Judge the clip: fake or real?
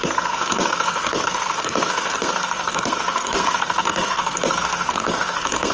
fake